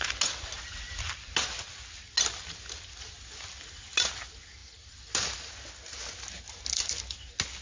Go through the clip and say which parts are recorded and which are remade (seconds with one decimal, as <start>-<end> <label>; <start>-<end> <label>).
0.0-7.6 recorded